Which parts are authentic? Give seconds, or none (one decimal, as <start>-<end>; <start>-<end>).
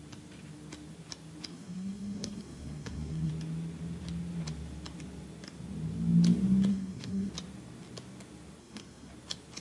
0.0-1.5; 3.3-6.7; 7.3-8.6; 9.1-9.6